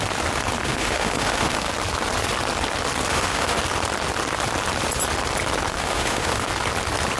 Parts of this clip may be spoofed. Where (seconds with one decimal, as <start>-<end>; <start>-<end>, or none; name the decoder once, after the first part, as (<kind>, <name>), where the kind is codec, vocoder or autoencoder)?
0.6-1.7 (autoencoder, DAC-VAE); 3.1-3.6; 5.7-6.5